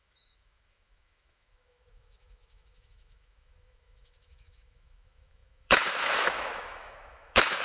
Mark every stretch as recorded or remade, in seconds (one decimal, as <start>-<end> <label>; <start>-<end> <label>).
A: 0.0-7.6 remade